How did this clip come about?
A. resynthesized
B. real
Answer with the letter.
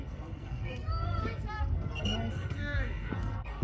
A